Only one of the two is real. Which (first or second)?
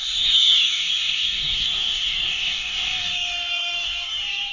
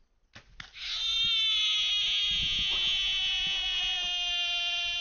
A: second